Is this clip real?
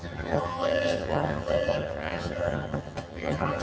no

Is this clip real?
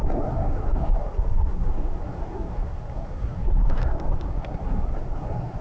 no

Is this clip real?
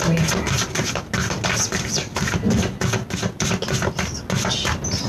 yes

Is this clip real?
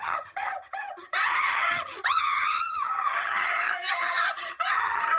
no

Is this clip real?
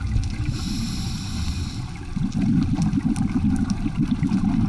yes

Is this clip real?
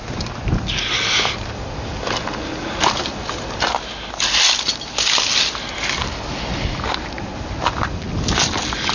yes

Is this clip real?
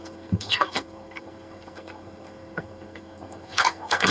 no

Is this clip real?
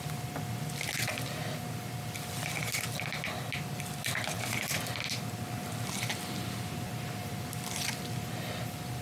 yes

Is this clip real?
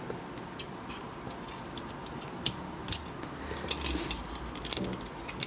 yes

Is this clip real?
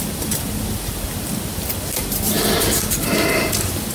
yes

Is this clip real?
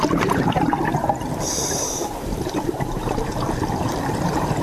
no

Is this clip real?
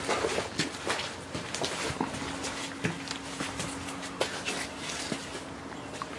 yes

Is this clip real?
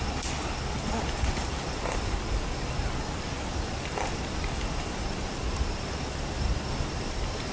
yes